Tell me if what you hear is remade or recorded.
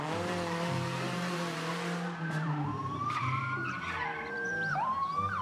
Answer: remade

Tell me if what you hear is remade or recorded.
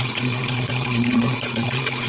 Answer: remade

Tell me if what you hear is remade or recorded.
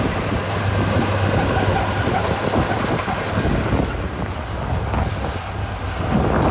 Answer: recorded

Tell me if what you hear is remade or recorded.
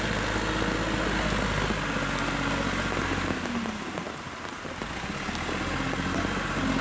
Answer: recorded